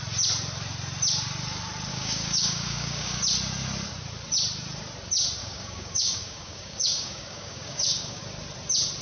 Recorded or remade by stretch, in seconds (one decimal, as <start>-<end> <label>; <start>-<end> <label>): 0.0-1.9 recorded; 1.9-3.2 remade; 3.2-5.4 recorded; 5.4-8.2 remade; 8.2-9.0 recorded